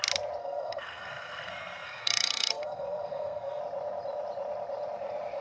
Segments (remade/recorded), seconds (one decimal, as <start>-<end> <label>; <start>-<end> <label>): 0.0-0.4 recorded; 0.4-3.6 remade; 3.6-5.4 recorded